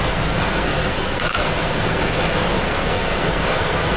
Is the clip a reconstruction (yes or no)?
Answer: yes